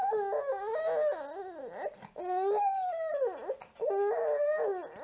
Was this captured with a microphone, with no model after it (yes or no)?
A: yes